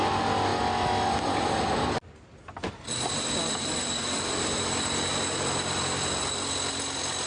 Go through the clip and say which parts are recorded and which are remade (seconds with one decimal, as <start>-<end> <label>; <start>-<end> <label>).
0.0-7.3 recorded